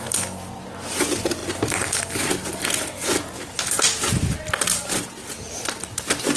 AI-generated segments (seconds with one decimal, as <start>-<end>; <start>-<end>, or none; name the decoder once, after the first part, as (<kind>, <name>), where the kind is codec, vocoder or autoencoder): none